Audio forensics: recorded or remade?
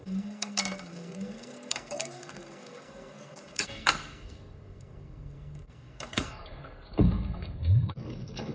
remade